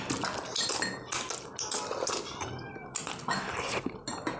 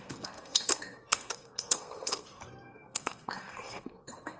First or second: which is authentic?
first